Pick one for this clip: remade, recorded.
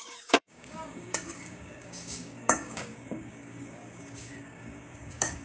remade